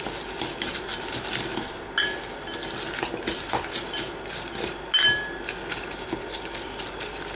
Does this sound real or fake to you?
real